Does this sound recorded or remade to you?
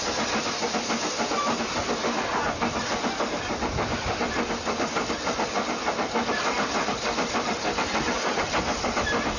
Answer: recorded